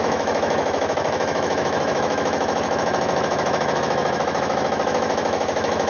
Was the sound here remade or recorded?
remade